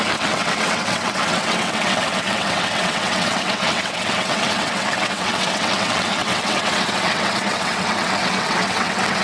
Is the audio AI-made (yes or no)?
yes